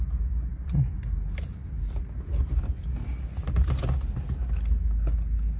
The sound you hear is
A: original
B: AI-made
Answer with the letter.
A